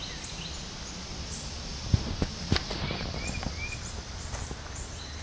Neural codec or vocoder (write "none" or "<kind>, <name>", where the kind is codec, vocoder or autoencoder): none